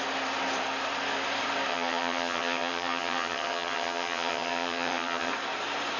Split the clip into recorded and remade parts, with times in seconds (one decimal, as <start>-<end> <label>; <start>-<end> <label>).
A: 0.0-1.7 recorded; 1.7-5.3 remade; 5.3-6.0 recorded